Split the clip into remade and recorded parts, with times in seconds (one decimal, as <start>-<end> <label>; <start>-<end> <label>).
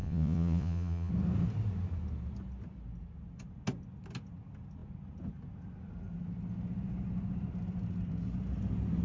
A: 0.0-1.1 remade; 1.1-9.0 recorded